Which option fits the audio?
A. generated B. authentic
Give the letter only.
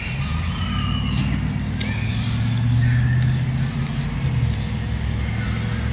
B